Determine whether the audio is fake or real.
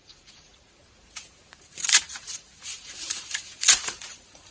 fake